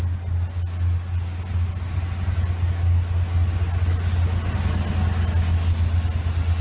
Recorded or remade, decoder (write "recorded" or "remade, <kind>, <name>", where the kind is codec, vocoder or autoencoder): recorded